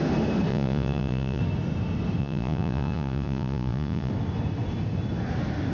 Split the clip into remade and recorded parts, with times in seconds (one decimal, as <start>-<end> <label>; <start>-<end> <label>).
0.0-0.5 recorded; 0.5-1.4 remade; 1.4-2.2 recorded; 2.2-4.1 remade; 4.1-5.7 recorded